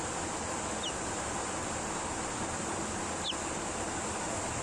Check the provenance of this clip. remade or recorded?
recorded